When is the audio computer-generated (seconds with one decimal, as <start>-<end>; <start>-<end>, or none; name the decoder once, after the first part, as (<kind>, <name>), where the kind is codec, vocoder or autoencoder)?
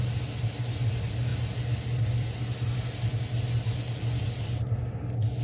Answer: none